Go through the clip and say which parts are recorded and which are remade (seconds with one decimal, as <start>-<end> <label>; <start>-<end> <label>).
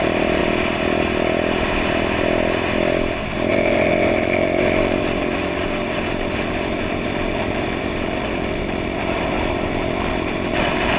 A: 0.0-0.4 remade; 0.4-3.5 recorded; 3.5-11.0 remade